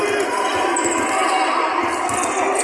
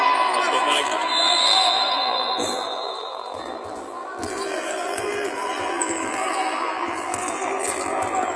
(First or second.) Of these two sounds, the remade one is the second